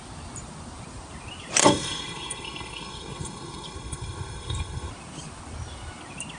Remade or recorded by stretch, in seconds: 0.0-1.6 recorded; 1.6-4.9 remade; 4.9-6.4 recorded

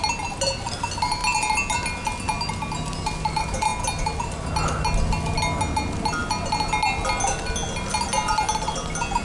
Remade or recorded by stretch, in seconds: 0.0-9.2 recorded

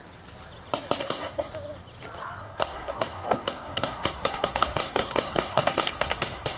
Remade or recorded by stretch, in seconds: 0.0-1.0 recorded; 1.0-1.5 remade; 1.5-2.4 recorded; 2.4-6.6 remade

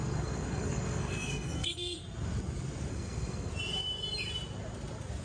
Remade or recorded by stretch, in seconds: 0.0-2.0 remade; 2.0-2.9 recorded; 2.9-3.5 remade; 3.5-5.2 recorded

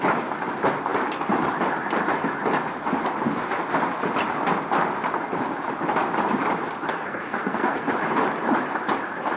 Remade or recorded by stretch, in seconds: 0.0-6.9 recorded; 6.9-7.9 remade; 7.9-9.4 recorded

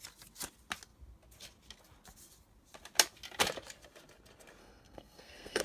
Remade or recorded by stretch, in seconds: 0.0-4.6 recorded; 4.6-5.6 remade

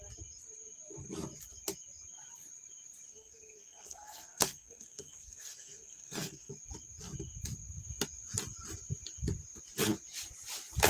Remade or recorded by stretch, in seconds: 0.0-3.1 recorded; 3.1-6.5 remade; 6.5-10.9 recorded

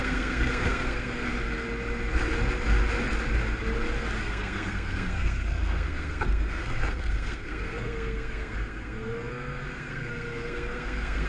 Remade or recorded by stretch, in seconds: 0.0-1.3 remade; 1.3-4.2 recorded; 4.2-11.3 remade